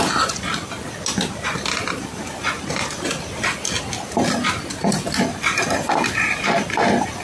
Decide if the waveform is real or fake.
real